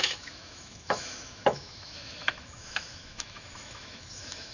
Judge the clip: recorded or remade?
remade